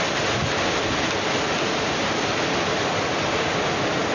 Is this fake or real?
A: real